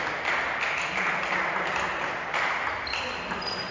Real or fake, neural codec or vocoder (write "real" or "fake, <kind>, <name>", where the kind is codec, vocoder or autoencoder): real